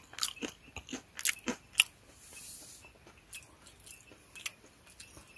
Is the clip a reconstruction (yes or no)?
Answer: no